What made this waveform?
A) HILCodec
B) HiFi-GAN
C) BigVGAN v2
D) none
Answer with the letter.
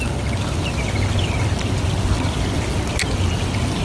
D